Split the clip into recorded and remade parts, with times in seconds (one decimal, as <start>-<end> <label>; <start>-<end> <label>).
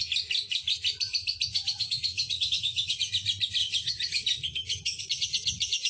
0.0-1.5 recorded; 1.5-3.1 remade; 3.1-3.6 recorded; 3.6-5.0 remade; 5.0-5.9 recorded